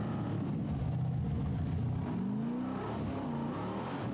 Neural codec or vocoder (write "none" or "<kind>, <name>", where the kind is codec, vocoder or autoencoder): none